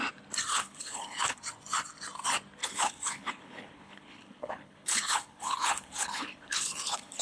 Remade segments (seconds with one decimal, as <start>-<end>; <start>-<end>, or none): 0.5-1.4; 2.6-7.2